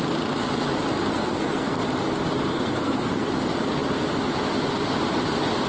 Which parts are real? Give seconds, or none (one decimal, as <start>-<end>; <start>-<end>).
0.0-1.1; 1.8-2.5; 3.3-5.7